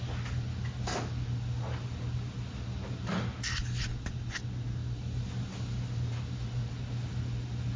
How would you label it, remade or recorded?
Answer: recorded